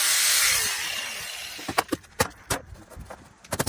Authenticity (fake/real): fake